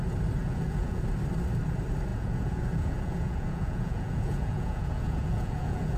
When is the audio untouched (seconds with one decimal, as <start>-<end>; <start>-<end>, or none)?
0.0-0.4; 1.0-2.1